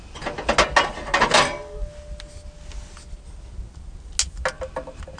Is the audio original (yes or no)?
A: yes